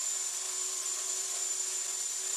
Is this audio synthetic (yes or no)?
yes